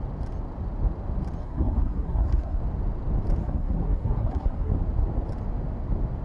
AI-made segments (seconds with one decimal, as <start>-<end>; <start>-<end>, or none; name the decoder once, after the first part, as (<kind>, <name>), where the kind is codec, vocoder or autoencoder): 1.4-2.6 (codec, SNAC); 3.4-4.7